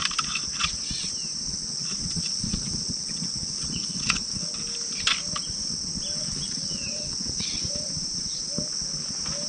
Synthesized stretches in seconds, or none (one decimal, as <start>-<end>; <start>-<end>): 0.5-1.1; 1.5-4.5; 6.2-7.7